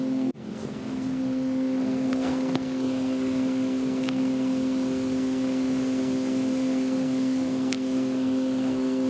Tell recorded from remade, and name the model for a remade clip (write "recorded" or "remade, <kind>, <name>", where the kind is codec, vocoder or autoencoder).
remade, codec, SNAC